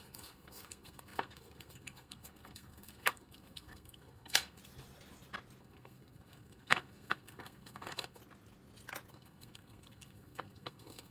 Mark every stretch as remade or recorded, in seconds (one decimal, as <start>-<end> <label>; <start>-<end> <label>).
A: 0.0-4.6 remade; 4.6-5.6 recorded; 5.6-8.2 remade; 8.2-9.1 recorded; 9.1-11.1 remade